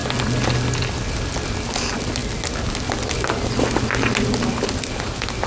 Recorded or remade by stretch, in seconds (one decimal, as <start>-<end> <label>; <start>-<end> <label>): 0.0-5.5 recorded